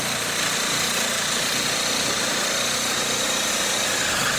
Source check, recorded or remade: recorded